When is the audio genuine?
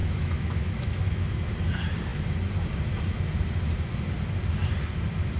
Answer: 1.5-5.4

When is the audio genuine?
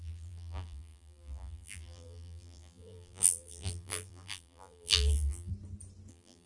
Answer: 5.5-6.1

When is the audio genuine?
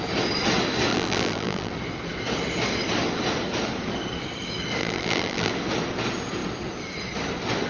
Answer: 0.0-0.9; 1.7-4.8; 5.5-7.7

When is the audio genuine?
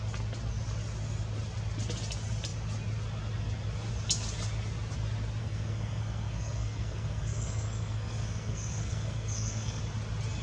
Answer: 0.0-5.4; 9.8-10.4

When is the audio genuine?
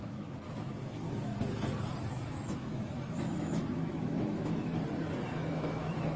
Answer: 1.3-2.1; 4.7-5.3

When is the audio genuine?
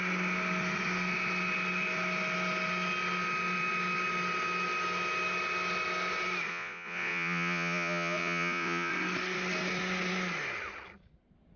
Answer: 0.0-6.5; 8.9-11.6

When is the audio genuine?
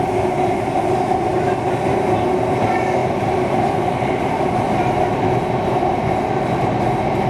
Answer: 0.0-7.3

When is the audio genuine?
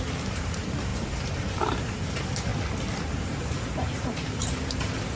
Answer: 2.5-3.1